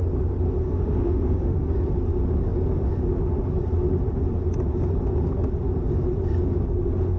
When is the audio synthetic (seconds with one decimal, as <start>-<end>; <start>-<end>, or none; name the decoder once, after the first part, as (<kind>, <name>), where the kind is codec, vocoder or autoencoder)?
0.6-1.7 (autoencoder, DAC-VAE)